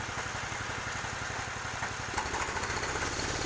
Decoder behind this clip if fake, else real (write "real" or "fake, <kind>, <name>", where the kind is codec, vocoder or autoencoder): real